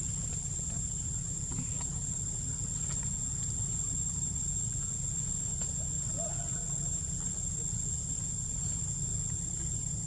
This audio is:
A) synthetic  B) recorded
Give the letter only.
B